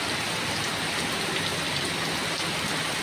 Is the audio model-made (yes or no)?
no